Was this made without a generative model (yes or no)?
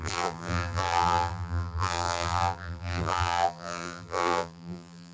no